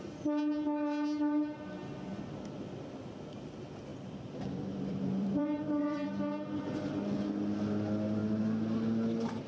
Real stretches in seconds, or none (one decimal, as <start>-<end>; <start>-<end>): 0.0-3.9; 6.1-9.5